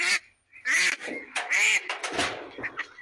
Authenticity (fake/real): fake